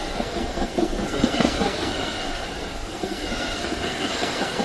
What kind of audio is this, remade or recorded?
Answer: remade